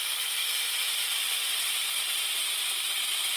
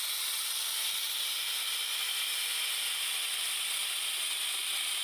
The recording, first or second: second